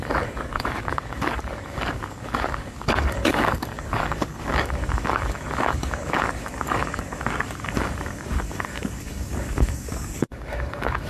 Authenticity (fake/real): fake